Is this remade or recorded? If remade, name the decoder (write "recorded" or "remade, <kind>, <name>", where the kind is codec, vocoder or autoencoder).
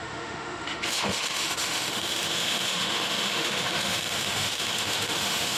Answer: remade, autoencoder, DAC-VAE